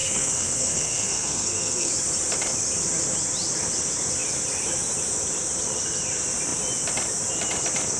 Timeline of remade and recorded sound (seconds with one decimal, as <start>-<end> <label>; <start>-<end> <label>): 0.0-1.9 remade; 1.9-8.0 recorded